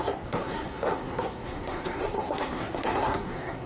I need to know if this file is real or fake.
fake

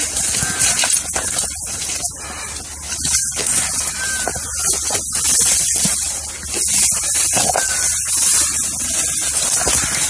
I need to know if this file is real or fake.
real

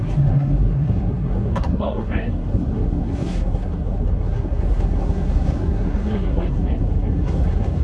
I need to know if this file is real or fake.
fake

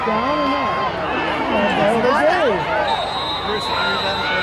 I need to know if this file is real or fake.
real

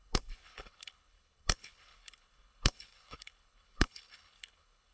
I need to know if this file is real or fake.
fake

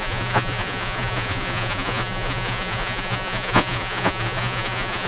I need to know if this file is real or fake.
fake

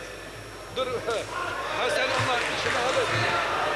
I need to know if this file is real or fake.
real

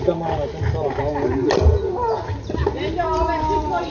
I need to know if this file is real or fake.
real